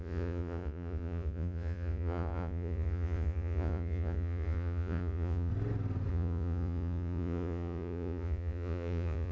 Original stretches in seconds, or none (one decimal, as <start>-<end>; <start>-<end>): 5.5-6.1